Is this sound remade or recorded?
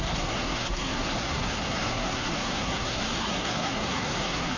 remade